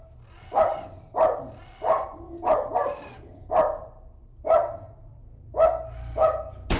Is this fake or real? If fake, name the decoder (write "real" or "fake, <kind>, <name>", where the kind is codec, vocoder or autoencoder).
real